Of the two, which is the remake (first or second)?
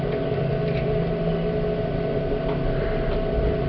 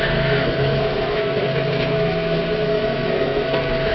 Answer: second